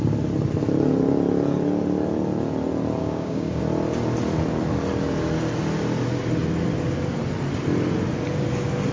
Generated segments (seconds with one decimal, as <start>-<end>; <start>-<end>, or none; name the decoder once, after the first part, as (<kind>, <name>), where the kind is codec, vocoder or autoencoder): 3.0-3.6 (codec, DAC)